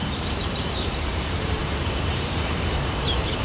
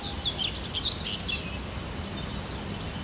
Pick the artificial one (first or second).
first